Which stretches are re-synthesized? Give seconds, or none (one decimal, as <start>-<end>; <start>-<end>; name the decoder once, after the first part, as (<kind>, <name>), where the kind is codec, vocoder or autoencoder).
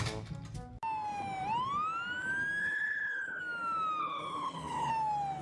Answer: 2.6-3.4 (codec, HILCodec); 4.0-4.9